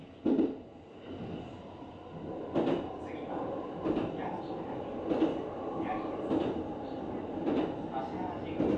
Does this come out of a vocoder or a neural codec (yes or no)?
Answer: no